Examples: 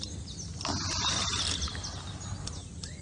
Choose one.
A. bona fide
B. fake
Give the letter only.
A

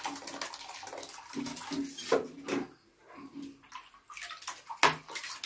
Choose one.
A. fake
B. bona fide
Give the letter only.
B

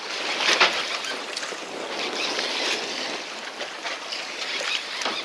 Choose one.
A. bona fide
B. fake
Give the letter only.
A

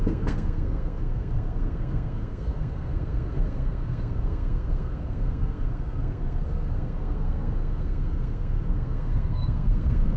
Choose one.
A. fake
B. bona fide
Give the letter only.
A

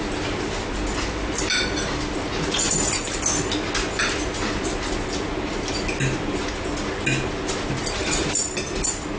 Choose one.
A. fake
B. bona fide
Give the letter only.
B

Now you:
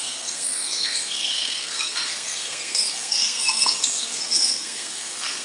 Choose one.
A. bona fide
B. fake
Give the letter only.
B